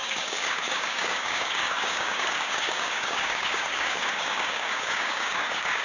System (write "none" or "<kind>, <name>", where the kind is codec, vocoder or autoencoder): codec, DAC